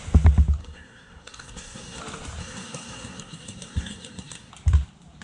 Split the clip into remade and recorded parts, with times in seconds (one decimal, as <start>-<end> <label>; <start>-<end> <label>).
0.0-0.6 recorded; 0.6-2.0 remade; 2.0-2.4 recorded; 2.4-4.5 remade; 4.5-5.2 recorded

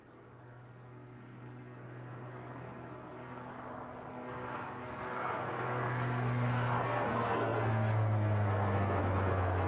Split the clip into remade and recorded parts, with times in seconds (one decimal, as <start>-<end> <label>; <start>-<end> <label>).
0.0-3.5 remade; 3.5-4.1 recorded; 4.1-9.7 remade

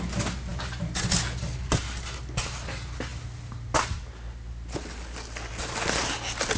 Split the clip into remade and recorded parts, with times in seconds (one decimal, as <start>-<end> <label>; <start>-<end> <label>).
0.0-6.6 recorded

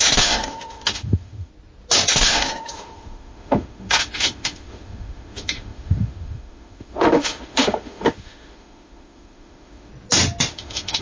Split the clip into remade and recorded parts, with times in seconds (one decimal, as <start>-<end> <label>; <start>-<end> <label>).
0.0-1.5 remade; 1.5-2.1 recorded; 2.1-9.9 remade; 9.9-10.5 recorded; 10.5-11.0 remade

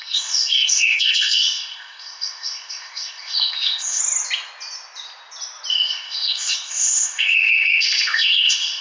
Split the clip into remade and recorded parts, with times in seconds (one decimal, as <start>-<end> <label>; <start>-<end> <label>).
0.0-4.0 remade; 4.0-5.7 recorded; 5.7-8.8 remade

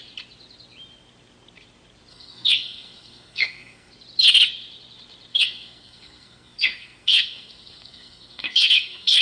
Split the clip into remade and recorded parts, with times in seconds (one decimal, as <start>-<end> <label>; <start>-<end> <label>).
0.0-2.1 recorded; 2.1-3.9 remade; 3.9-5.3 recorded; 5.3-9.2 remade

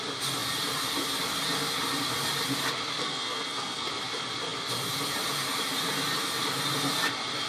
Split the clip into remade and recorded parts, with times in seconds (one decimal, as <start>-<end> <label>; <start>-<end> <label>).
0.0-3.0 recorded; 3.0-3.9 remade; 3.9-7.5 recorded